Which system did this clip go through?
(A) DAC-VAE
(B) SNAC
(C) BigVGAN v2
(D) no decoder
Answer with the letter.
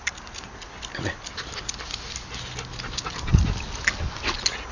D